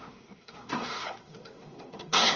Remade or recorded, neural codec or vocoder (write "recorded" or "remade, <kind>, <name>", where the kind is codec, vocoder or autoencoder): remade, codec, SNAC